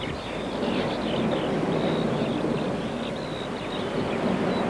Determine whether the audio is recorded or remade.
recorded